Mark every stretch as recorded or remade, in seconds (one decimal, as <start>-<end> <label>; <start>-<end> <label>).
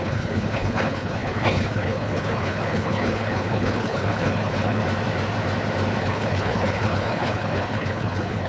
0.0-4.8 remade; 4.8-6.0 recorded; 6.0-8.5 remade